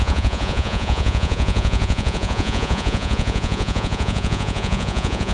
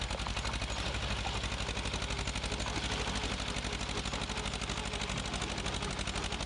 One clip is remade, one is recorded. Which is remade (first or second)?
first